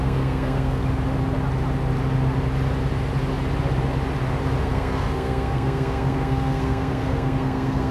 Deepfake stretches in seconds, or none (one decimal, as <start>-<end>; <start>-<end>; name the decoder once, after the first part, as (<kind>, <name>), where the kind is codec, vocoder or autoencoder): 0.0-0.8 (codec, SNAC); 4.6-7.9